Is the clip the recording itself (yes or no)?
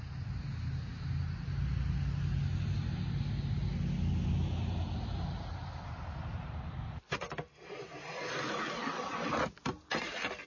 yes